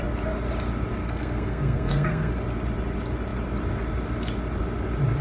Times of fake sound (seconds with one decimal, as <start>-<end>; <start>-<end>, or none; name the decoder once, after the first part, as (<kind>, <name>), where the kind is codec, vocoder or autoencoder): 1.0-2.3 (codec, SNAC)